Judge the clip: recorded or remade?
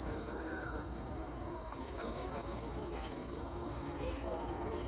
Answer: remade